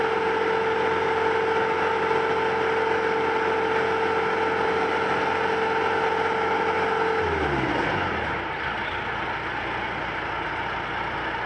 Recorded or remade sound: recorded